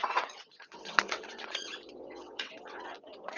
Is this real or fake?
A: fake